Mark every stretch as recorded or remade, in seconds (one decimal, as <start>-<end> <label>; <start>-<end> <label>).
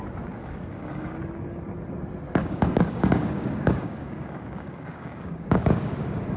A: 0.0-0.4 recorded; 0.4-1.2 remade; 1.2-2.4 recorded; 2.4-6.4 remade